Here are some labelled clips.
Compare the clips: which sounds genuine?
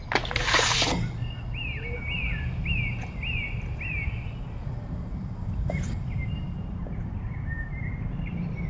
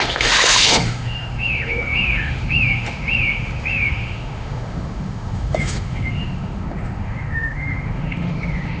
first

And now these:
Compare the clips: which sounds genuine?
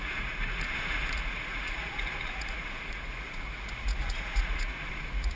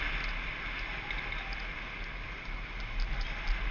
second